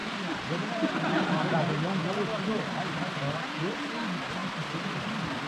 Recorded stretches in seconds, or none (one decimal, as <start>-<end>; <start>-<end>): 1.6-5.5